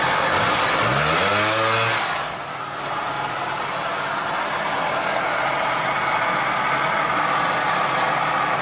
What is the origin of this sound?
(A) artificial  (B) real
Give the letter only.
B